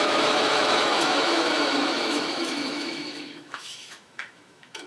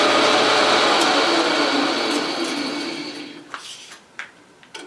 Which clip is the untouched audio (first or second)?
second